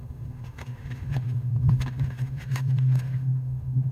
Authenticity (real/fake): fake